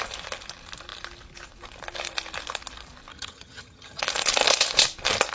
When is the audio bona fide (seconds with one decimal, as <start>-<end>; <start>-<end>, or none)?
0.0-3.1; 4.0-5.3